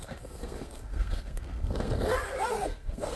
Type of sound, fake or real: fake